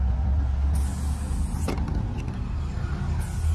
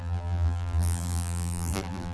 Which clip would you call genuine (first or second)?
first